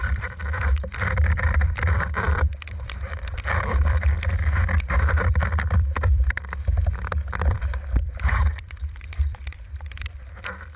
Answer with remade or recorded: remade